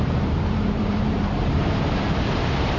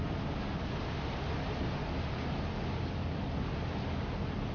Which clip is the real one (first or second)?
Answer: second